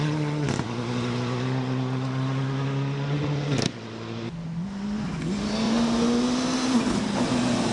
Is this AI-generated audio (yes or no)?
no